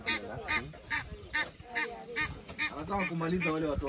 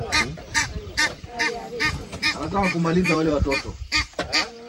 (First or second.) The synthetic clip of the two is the second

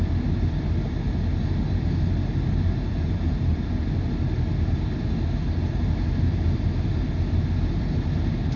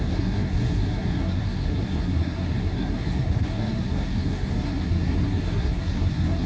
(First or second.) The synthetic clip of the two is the second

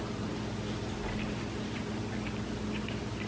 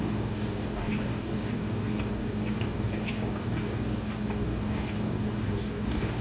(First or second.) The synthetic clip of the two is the second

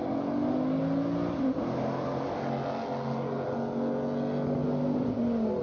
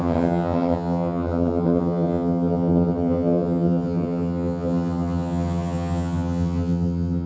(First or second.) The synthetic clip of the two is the second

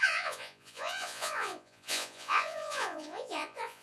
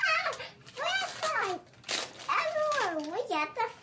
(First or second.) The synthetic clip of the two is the first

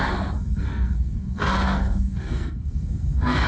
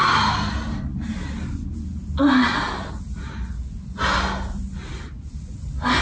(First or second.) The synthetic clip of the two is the first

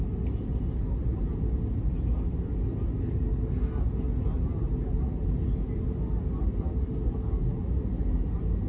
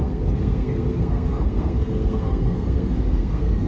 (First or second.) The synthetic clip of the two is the second